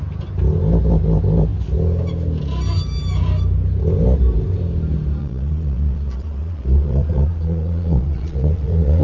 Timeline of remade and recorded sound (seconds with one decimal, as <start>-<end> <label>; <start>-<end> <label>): 0.0-5.2 recorded; 5.2-9.0 remade